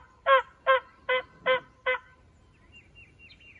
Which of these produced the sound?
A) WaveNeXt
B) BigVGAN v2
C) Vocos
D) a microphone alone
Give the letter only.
D